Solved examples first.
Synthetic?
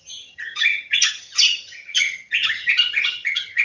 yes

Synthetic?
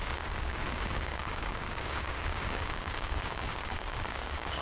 yes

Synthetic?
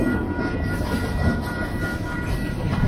yes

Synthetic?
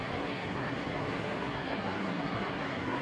yes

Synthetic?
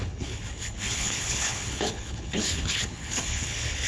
yes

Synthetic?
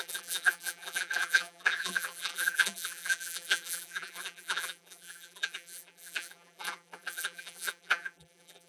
yes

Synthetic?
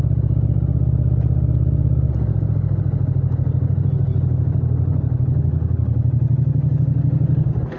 no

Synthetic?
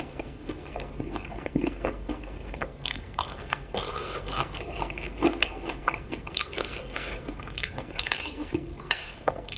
yes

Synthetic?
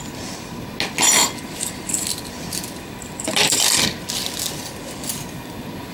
no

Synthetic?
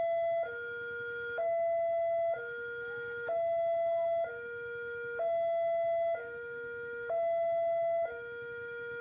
yes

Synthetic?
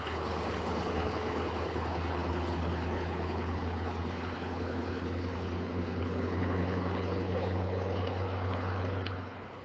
yes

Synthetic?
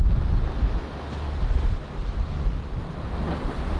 no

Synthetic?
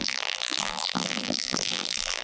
yes